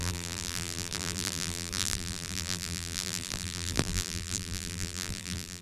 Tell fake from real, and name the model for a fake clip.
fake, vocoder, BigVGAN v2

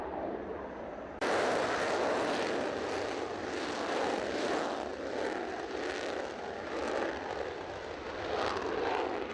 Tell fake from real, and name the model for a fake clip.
fake, vocoder, BigVGAN v2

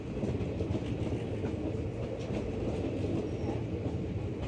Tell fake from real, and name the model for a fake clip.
real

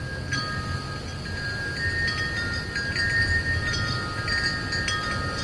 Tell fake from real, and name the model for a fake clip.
real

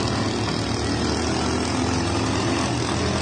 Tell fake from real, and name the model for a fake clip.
real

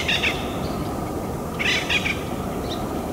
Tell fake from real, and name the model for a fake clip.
real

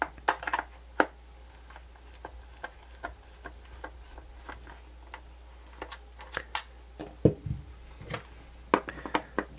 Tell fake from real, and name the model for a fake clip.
real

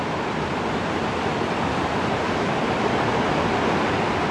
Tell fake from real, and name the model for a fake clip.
fake, vocoder, BigVGAN v2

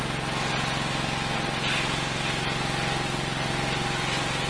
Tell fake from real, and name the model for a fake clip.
real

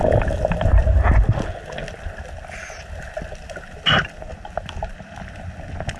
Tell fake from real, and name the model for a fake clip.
real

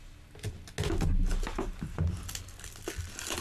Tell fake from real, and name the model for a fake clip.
real